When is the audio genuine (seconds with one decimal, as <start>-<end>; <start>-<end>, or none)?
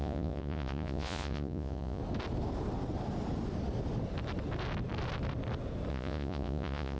2.0-5.9